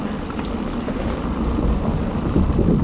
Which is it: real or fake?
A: real